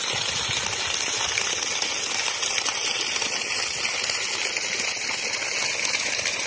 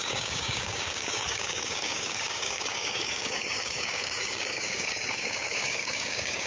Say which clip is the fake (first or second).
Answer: second